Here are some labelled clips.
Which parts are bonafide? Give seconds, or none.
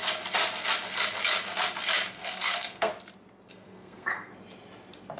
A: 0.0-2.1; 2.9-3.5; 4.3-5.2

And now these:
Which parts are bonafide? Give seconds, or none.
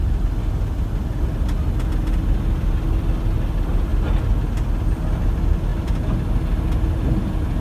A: 0.0-7.6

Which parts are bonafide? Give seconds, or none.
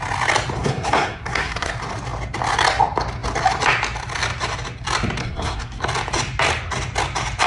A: 0.0-0.6; 1.7-5.2; 5.8-7.5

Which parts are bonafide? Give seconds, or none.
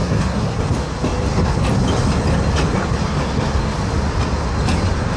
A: 0.6-5.2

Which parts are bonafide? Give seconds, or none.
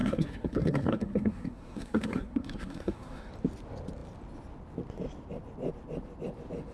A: 3.3-6.7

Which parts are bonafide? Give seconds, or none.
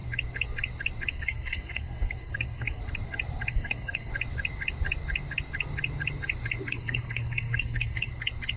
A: 0.0-1.1; 2.8-3.5; 4.1-6.7; 8.1-8.6